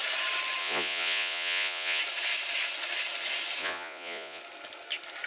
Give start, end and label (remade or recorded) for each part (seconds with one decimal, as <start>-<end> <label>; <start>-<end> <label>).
0.0-0.6 recorded; 0.6-2.0 remade; 2.0-3.6 recorded; 3.6-4.4 remade; 4.4-5.3 recorded